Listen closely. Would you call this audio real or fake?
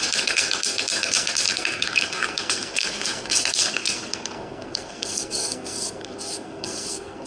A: fake